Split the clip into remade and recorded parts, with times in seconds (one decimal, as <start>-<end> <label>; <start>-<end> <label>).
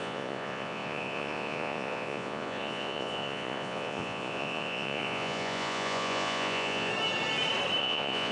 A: 0.0-6.9 remade; 6.9-7.8 recorded; 7.8-8.3 remade